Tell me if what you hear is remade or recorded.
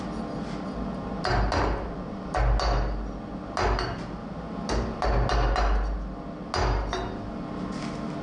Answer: recorded